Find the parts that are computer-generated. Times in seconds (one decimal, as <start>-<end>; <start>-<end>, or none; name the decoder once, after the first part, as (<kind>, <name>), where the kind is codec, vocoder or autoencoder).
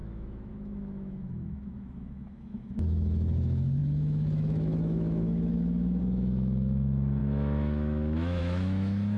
0.0-9.2 (autoencoder, DAC-VAE)